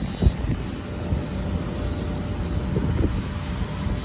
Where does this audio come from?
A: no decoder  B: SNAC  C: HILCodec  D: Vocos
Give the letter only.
A